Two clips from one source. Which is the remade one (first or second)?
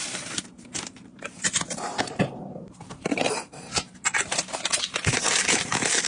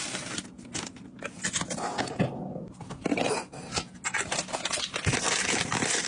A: first